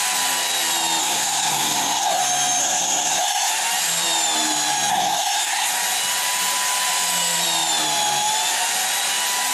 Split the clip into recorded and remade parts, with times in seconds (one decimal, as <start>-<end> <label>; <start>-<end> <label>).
0.0-1.0 recorded; 1.0-2.2 remade; 2.2-2.6 recorded; 2.6-3.5 remade; 3.5-4.9 recorded; 4.9-5.7 remade; 5.7-9.5 recorded